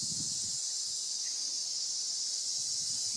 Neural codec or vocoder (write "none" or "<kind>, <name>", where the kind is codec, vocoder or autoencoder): none